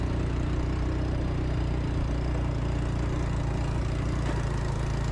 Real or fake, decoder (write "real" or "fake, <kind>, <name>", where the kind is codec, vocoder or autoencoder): real